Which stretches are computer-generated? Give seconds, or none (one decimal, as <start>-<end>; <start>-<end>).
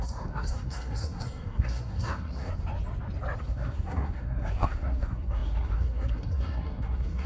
0.0-2.5; 3.4-7.3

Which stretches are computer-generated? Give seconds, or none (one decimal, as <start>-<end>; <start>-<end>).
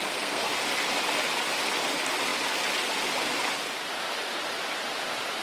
0.0-0.5